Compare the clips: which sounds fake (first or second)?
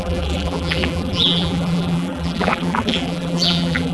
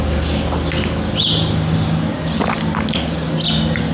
first